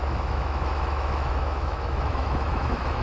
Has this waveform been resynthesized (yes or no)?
yes